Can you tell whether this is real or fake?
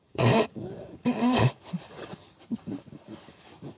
fake